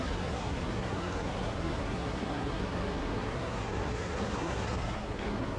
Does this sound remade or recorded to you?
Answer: remade